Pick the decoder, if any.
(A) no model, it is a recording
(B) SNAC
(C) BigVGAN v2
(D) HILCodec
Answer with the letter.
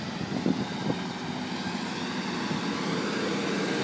A